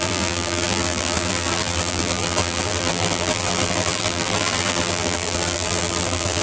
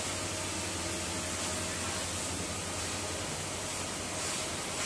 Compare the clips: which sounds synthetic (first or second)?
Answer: first